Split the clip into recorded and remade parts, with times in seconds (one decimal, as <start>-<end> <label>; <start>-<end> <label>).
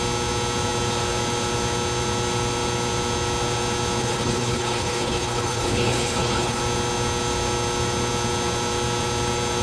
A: 0.0-4.0 recorded; 4.0-6.6 remade; 6.6-9.6 recorded